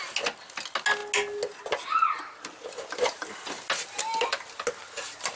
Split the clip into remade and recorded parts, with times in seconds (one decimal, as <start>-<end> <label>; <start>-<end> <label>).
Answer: 0.0-5.4 recorded